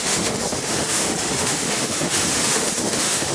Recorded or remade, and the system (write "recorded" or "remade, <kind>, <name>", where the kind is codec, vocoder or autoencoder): remade, autoencoder, DAC-VAE